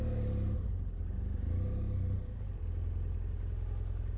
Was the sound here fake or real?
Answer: real